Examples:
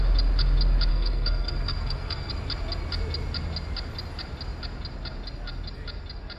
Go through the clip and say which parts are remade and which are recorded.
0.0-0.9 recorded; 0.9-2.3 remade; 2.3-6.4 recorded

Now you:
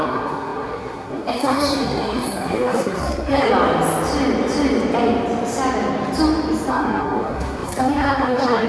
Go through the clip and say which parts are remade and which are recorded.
0.0-3.5 remade; 3.5-6.7 recorded; 6.7-8.7 remade

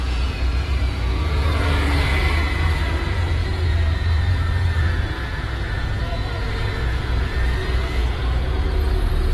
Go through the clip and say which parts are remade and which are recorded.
0.0-9.3 remade

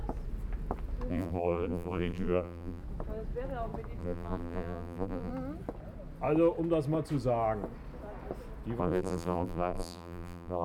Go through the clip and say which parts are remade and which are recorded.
0.0-1.1 recorded; 1.1-2.8 remade; 2.8-4.0 recorded; 4.0-5.3 remade; 5.3-8.8 recorded; 8.8-10.6 remade

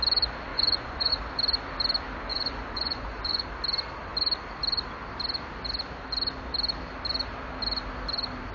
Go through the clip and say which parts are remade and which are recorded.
0.0-0.5 recorded; 0.5-1.1 remade; 1.1-2.3 recorded; 2.3-3.4 remade; 3.4-8.5 recorded

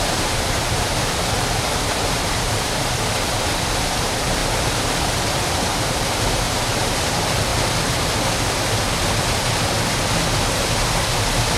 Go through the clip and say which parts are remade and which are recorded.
0.0-7.5 remade; 7.5-11.6 recorded

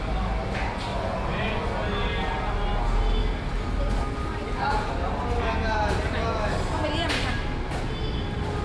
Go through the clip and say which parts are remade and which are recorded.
0.0-0.9 recorded; 0.9-1.7 remade; 1.7-8.6 recorded

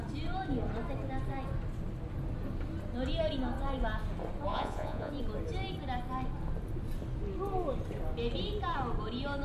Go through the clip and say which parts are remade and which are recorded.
0.0-4.5 recorded; 4.5-5.1 remade; 5.1-9.4 recorded